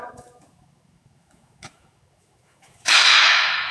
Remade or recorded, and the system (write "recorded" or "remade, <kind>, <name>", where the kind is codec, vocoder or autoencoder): remade, autoencoder, DAC-VAE